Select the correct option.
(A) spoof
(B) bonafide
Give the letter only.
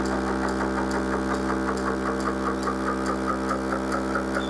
B